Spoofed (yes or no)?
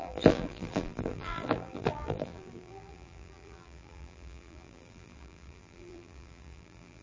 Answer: yes